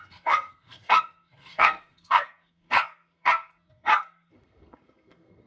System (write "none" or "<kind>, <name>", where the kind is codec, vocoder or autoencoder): codec, SNAC